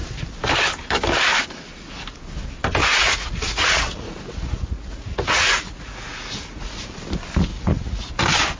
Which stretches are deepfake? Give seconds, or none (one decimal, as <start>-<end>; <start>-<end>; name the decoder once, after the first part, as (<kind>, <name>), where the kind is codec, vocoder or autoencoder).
2.8-6.9 (vocoder, Vocos); 7.5-8.1